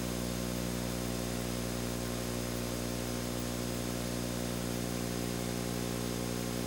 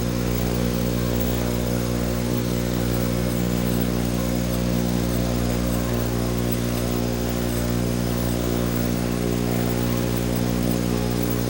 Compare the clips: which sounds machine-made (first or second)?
second